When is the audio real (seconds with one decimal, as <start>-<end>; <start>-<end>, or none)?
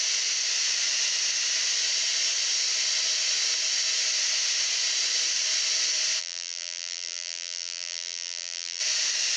0.0-6.2; 8.8-9.4